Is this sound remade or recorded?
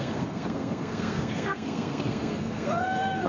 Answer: remade